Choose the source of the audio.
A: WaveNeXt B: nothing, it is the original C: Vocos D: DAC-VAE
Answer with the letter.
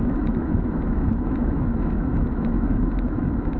D